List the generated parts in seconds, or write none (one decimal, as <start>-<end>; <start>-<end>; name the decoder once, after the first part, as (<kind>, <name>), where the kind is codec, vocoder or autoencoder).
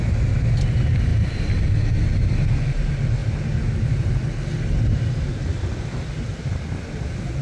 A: none